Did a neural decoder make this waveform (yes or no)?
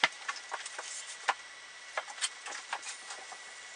no